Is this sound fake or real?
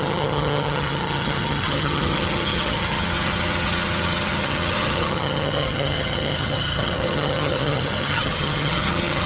fake